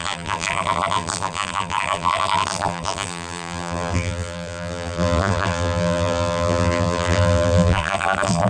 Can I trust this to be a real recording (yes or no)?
no